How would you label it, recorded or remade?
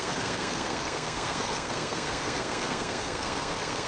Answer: remade